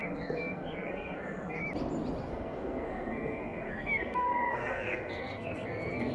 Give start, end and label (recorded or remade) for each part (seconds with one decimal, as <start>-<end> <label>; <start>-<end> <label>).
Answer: 0.0-1.6 remade; 1.6-2.2 recorded; 2.2-6.1 remade